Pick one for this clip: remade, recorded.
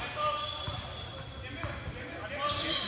recorded